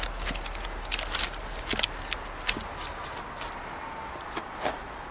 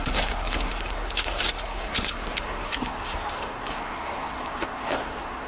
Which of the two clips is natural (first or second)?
first